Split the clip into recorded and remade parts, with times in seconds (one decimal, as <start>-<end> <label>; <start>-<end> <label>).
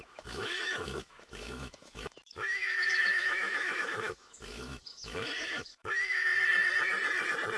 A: 0.0-6.3 remade; 6.3-7.6 recorded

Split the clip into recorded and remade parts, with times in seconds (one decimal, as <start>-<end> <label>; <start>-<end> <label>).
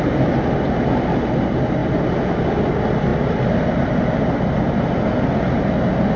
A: 0.0-6.2 recorded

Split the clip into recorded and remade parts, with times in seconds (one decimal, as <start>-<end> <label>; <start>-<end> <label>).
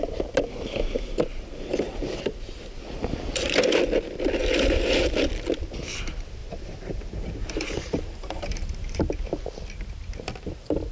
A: 0.0-6.4 recorded; 6.4-7.0 remade; 7.0-7.4 recorded; 7.4-9.0 remade; 9.0-10.9 recorded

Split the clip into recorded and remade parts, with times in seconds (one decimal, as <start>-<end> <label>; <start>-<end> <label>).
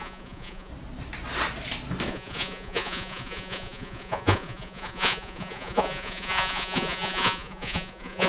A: 0.0-0.7 remade; 0.7-2.1 recorded; 2.1-8.3 remade